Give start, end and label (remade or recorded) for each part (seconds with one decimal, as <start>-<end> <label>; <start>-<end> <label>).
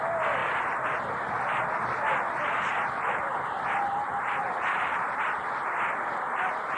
0.0-0.4 recorded; 0.4-1.1 remade; 1.1-2.7 recorded; 2.7-6.3 remade; 6.3-6.8 recorded